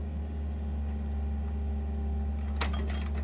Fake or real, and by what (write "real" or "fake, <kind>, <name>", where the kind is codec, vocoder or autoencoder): real